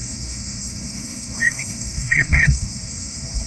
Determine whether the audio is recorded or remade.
remade